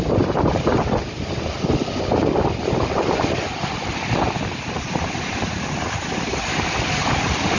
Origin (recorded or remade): recorded